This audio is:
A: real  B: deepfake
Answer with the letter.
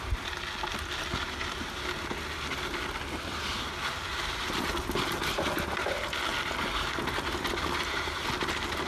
A